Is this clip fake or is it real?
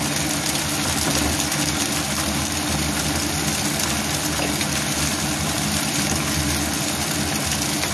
real